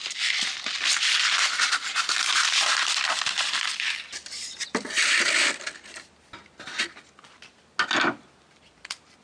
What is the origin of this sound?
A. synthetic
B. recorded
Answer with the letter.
B